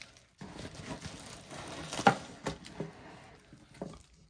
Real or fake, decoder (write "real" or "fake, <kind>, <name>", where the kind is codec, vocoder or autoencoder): real